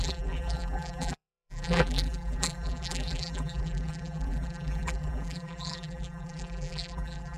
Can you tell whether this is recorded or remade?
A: remade